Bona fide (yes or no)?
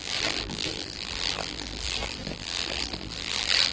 no